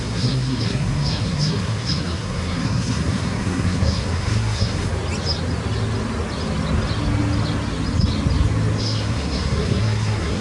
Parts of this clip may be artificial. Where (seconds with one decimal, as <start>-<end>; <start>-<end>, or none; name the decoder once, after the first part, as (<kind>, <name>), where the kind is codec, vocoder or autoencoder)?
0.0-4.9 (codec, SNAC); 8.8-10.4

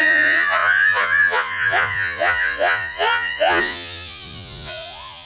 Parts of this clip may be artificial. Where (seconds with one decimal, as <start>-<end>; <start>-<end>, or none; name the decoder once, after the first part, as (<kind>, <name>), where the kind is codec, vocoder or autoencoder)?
0.0-5.3 (vocoder, Vocos)

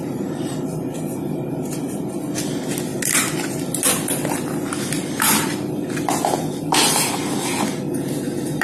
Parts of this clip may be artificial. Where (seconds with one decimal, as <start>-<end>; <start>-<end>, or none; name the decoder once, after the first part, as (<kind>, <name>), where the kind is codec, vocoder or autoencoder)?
none

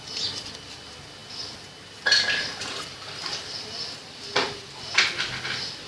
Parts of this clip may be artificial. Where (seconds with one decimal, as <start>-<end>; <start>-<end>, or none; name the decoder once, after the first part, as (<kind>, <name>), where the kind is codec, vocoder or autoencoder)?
none

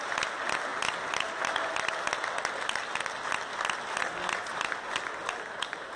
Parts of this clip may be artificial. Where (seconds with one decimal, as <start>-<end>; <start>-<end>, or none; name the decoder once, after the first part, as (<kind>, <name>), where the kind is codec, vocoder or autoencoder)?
none

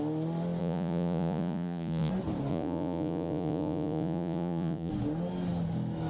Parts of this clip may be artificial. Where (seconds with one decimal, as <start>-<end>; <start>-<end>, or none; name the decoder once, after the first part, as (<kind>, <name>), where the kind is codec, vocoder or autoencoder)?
0.6-2.1 (vocoder, Vocos); 2.5-4.9

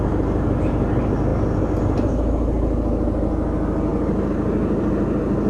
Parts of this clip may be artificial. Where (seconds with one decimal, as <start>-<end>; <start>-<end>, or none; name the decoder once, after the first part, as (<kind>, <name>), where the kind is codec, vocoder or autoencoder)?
3.9-4.9 (vocoder, BigVGAN v2)

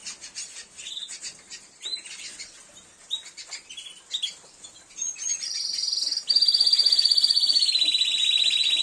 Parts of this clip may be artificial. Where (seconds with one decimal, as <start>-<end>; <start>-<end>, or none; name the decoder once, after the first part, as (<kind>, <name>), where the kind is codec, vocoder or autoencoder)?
0.0-2.1 (vocoder, BigVGAN v2); 5.0-5.7